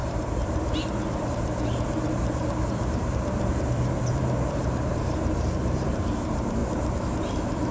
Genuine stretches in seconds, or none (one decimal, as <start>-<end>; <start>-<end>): 6.6-7.7